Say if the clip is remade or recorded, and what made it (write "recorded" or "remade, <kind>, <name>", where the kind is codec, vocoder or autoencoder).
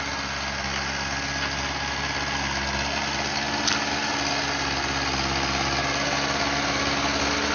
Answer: recorded